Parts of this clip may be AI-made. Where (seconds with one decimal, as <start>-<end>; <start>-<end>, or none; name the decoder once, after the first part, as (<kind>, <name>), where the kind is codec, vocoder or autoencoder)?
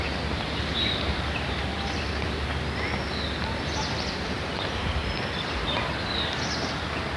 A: 0.0-1.7 (vocoder, BigVGAN v2); 4.1-5.0; 5.9-7.2